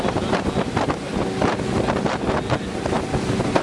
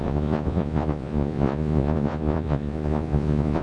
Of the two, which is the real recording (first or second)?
first